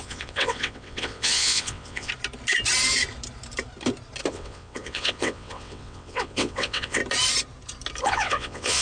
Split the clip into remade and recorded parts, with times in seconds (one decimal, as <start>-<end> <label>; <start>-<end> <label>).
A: 0.0-2.1 remade; 2.1-4.3 recorded; 4.3-7.0 remade; 7.0-8.0 recorded; 8.0-8.8 remade